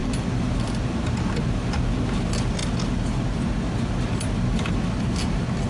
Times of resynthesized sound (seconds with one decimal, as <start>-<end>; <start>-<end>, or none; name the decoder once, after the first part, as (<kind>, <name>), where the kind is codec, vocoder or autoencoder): none